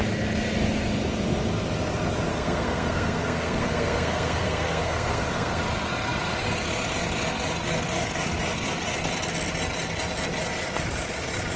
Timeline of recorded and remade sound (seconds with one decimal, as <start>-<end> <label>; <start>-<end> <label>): 0.0-2.3 recorded; 2.3-5.6 remade; 5.6-11.6 recorded